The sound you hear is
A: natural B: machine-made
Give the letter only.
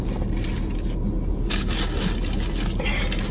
A